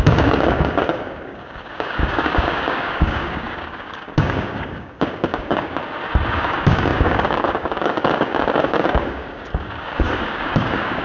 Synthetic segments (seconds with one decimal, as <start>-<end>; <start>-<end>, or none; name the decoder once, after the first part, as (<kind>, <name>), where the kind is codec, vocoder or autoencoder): 0.0-5.8 (codec, DAC); 6.3-11.0